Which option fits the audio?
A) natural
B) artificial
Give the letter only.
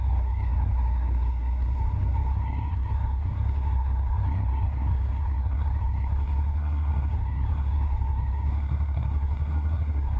B